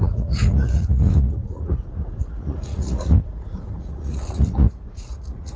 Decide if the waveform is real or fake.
fake